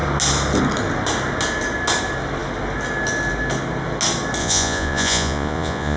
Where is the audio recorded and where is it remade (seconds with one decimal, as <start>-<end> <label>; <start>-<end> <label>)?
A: 0.0-4.4 recorded; 4.4-6.0 remade